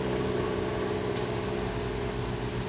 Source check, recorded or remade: recorded